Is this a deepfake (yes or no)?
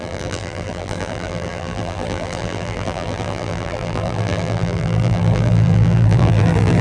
yes